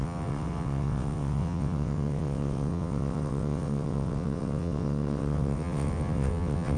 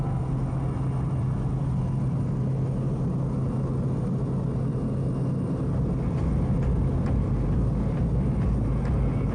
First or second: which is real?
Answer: second